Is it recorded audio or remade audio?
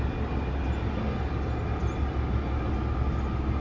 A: recorded